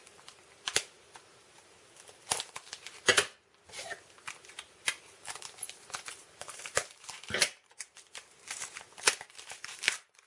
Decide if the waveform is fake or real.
fake